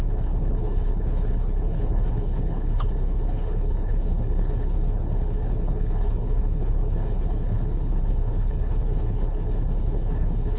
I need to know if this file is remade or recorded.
remade